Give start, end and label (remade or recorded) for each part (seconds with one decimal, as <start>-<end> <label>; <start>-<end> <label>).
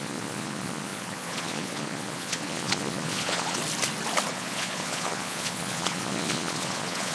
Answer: 0.0-3.6 remade; 3.6-4.3 recorded; 4.3-7.1 remade